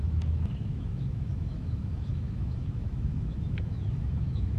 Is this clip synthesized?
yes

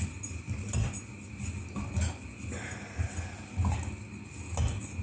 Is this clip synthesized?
no